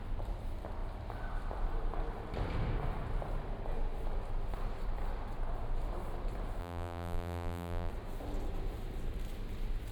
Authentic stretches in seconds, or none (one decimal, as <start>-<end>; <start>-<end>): 0.0-6.6; 7.9-9.9